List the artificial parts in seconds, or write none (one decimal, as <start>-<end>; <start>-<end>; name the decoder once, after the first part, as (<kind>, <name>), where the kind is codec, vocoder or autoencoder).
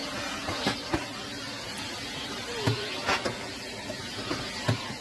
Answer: none